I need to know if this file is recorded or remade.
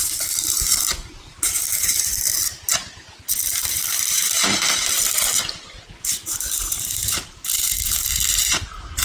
remade